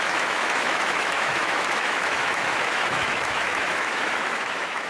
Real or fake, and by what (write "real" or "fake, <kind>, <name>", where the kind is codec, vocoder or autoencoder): fake, autoencoder, DAC-VAE